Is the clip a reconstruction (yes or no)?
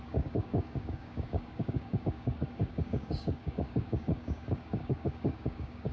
yes